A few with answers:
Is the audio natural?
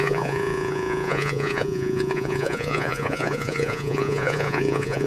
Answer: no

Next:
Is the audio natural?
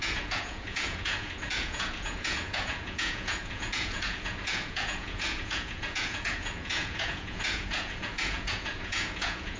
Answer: no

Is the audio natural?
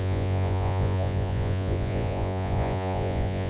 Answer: no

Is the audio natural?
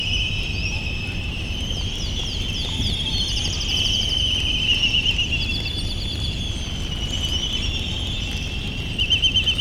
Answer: yes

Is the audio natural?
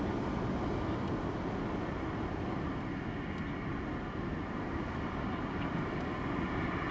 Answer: yes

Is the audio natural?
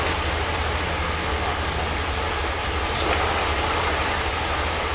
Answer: yes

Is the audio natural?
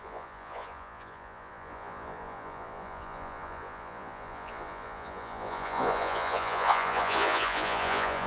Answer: no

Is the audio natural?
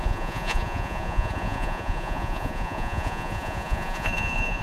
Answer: no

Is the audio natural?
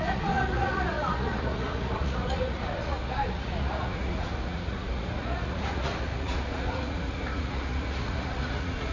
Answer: no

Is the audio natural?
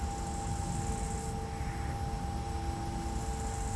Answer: yes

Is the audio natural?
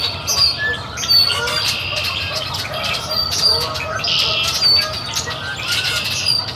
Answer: yes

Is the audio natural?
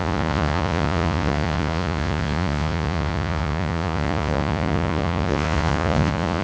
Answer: no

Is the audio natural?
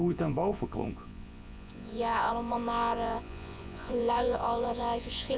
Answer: no